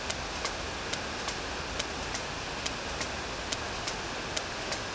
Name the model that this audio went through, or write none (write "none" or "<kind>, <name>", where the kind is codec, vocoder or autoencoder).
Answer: none